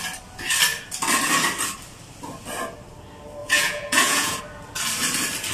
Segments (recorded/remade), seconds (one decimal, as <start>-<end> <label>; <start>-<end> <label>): 0.0-3.4 recorded; 3.4-4.4 remade; 4.4-5.5 recorded